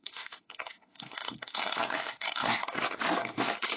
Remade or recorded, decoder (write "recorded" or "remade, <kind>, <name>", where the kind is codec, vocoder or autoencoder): remade, codec, SNAC